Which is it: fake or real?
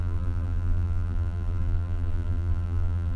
fake